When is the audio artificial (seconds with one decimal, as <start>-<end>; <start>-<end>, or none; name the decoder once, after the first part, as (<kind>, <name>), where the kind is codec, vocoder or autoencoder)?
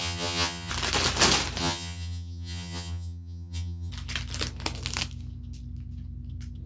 0.0-0.7 (vocoder, HiFi-GAN); 1.6-3.9